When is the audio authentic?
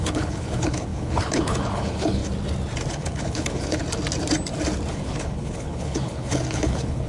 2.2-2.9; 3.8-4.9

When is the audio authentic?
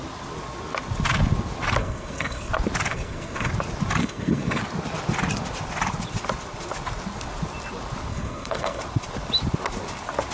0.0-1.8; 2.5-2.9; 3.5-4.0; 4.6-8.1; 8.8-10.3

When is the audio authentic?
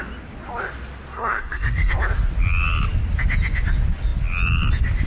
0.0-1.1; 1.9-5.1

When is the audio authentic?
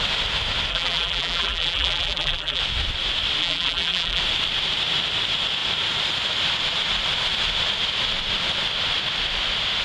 0.0-0.7; 2.6-3.4; 4.2-9.8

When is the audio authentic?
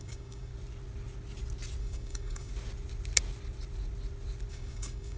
0.5-1.8; 2.5-4.5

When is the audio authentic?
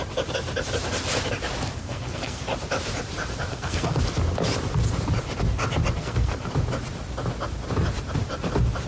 0.0-1.8; 2.4-3.5; 4.0-6.0; 6.5-8.9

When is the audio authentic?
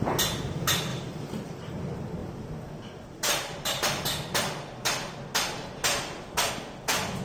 0.0-0.9; 1.8-7.2